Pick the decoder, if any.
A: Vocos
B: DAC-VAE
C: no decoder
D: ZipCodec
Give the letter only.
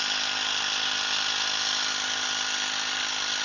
C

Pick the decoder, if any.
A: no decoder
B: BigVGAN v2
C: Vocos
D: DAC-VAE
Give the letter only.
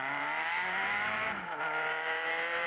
B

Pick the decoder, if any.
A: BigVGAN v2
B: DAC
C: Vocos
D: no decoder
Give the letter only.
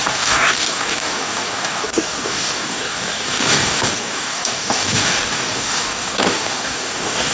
B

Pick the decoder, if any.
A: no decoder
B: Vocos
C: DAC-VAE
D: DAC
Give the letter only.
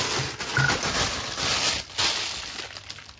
A